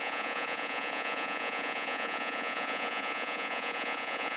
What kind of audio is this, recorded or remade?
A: remade